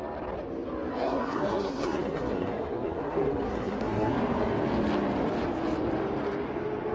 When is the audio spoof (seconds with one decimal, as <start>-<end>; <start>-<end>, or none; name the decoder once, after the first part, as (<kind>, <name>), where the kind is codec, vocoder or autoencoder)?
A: 0.9-4.2 (codec, SNAC)